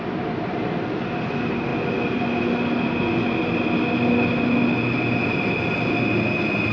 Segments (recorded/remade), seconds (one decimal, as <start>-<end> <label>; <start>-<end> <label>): 0.0-6.7 recorded